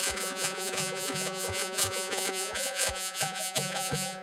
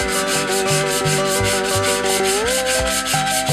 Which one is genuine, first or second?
second